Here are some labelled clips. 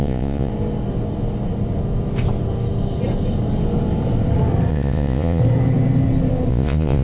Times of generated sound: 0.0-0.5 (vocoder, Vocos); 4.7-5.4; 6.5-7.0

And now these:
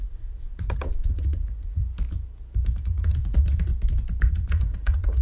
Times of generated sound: 0.0-1.8 (vocoder, Vocos); 2.8-3.7; 4.3-5.2

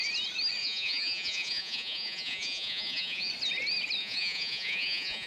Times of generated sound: 0.6-3.3 (vocoder, Vocos); 4.0-5.3

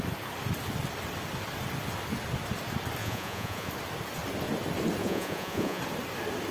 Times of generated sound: 3.0-3.7 (vocoder, Vocos); 5.0-5.8

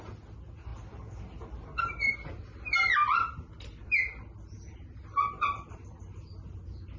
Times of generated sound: none